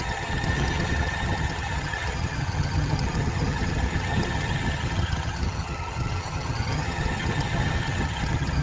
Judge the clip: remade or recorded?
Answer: remade